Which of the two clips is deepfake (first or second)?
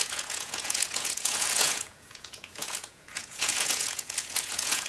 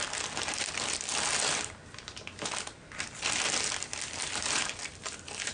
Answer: first